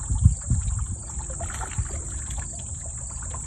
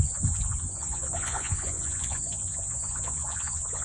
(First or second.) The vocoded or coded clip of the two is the second